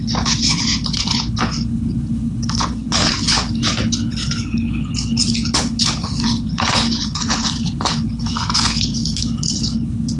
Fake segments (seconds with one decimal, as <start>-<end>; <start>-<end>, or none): 0.0-10.2